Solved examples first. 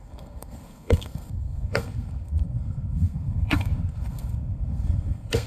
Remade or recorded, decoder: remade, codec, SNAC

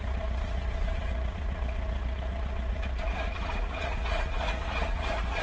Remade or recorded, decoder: remade, vocoder, Vocos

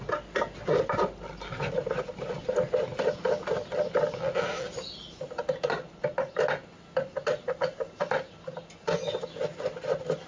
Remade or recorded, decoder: recorded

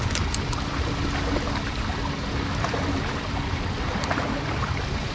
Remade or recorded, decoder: recorded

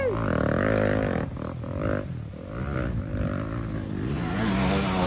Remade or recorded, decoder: recorded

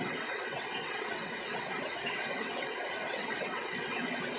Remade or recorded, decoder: remade, vocoder, WaveNeXt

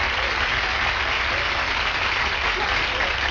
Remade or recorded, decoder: recorded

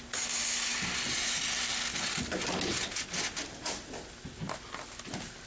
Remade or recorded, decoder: recorded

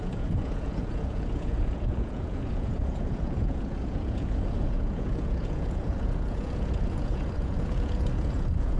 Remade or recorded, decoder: remade, vocoder, Vocos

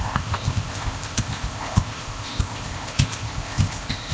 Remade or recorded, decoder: remade, codec, ZipCodec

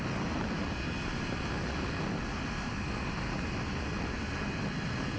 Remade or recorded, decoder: recorded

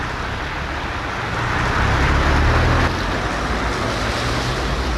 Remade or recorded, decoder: recorded